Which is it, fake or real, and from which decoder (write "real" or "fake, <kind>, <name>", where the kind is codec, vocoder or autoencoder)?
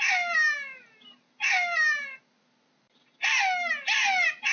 real